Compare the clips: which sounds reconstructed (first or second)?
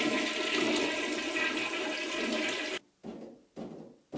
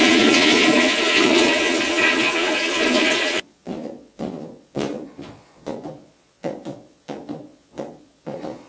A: second